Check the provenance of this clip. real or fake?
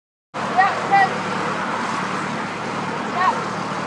real